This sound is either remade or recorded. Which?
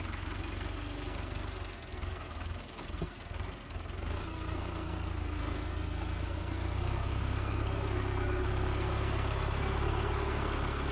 remade